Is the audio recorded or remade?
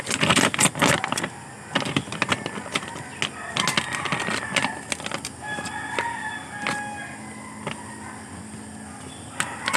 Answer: recorded